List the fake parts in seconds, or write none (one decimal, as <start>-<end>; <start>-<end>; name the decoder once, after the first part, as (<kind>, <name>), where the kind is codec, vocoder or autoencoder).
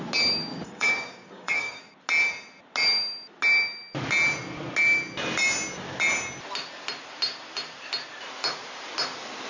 0.5-1.9 (codec, DAC)